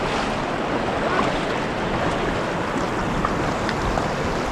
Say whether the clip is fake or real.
real